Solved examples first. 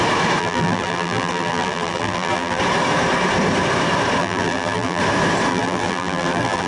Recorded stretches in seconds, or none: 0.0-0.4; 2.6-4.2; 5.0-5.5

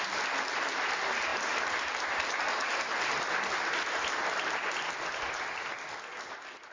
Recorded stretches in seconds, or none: 0.0-6.7

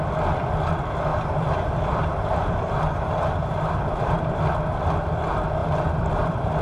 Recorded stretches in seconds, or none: 0.0-1.1; 4.4-5.6

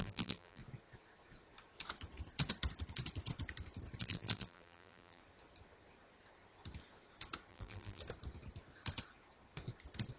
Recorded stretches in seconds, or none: 0.6-4.0; 5.2-7.5; 8.0-10.2

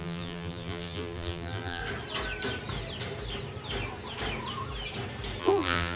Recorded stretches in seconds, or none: 1.8-5.4

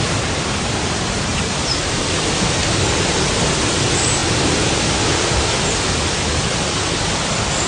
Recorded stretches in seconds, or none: 0.0-1.3; 1.8-7.7

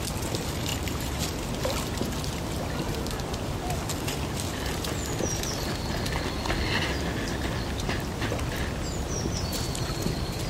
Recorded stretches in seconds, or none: 0.0-0.7; 1.2-10.5

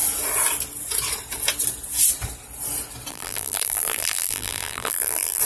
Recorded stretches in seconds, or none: 0.0-3.1